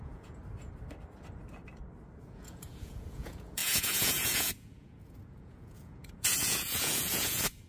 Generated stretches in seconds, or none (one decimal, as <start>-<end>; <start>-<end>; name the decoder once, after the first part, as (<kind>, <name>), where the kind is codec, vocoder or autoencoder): 0.0-0.4 (vocoder, Vocos); 2.2-7.7